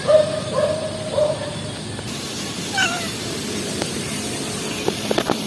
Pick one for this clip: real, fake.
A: fake